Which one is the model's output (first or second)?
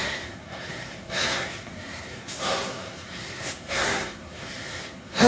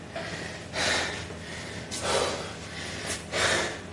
first